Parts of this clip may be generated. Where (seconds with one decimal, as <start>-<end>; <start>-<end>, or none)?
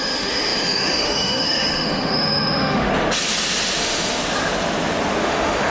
0.0-2.9; 3.8-4.2; 5.2-5.7